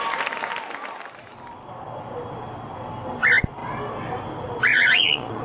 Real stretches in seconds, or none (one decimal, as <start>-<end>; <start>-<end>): 0.0-4.7